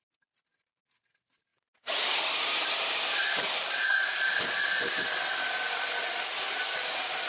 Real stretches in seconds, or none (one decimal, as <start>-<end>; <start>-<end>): 0.0-7.3